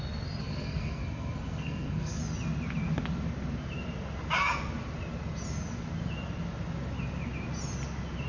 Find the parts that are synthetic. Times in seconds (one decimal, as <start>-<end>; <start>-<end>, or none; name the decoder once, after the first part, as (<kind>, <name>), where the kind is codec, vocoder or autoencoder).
0.4-2.2 (codec, SNAC)